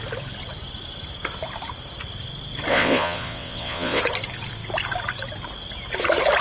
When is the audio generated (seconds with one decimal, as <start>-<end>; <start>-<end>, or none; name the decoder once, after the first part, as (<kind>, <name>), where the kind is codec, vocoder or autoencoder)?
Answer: 2.7-4.0 (vocoder, WaveNeXt)